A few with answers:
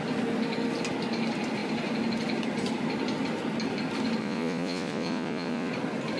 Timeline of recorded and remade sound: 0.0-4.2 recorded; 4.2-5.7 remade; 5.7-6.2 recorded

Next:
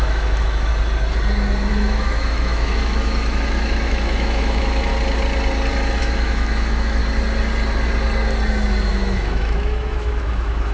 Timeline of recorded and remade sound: 0.0-0.7 remade; 0.7-1.7 recorded; 1.7-4.9 remade; 4.9-6.0 recorded; 6.0-7.0 remade; 7.0-8.9 recorded; 8.9-10.7 remade

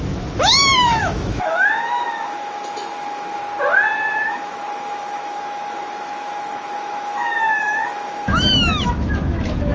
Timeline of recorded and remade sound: 0.0-3.4 remade; 3.4-4.3 recorded; 4.3-9.7 remade

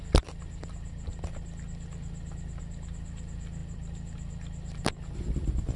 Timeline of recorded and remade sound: 0.0-5.8 recorded

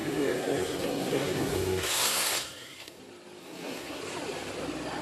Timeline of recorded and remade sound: 0.0-3.0 remade; 3.0-3.4 recorded; 3.4-4.0 remade; 4.0-5.0 recorded

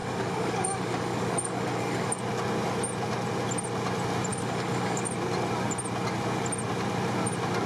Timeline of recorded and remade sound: 0.0-2.2 remade; 2.2-4.3 recorded; 4.3-5.1 remade; 5.1-7.7 recorded